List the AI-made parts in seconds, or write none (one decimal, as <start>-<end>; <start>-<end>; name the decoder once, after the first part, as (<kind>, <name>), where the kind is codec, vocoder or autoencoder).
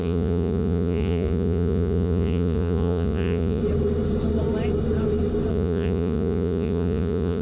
0.0-3.6 (vocoder, Vocos); 5.5-7.4